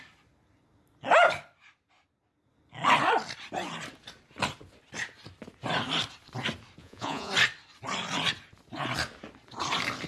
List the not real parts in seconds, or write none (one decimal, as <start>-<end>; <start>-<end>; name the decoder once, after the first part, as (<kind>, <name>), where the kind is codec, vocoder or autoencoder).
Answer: 6.8-7.3 (vocoder, Vocos)